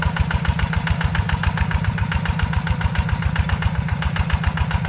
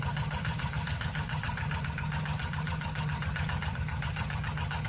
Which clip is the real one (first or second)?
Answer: first